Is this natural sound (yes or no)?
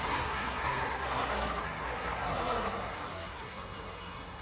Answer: no